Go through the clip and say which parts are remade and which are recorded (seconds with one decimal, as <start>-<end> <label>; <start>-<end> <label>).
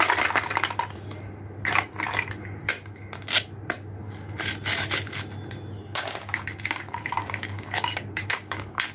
0.0-5.8 recorded; 5.8-8.9 remade